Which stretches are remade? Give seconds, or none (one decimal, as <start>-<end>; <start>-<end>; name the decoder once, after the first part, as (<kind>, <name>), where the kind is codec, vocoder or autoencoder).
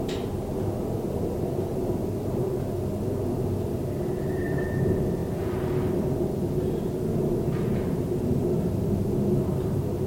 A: none